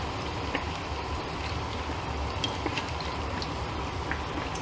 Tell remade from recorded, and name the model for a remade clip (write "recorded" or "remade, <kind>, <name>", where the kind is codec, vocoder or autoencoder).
remade, vocoder, BigVGAN v2